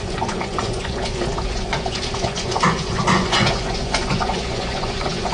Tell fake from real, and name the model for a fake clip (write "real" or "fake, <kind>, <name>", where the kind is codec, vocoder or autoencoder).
fake, vocoder, Vocos